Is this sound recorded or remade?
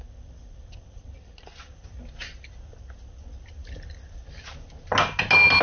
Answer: recorded